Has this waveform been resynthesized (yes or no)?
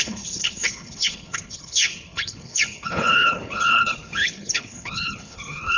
yes